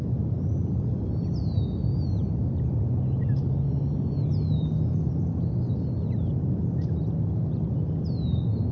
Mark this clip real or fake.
real